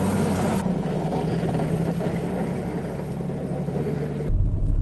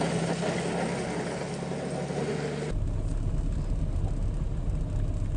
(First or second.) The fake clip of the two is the first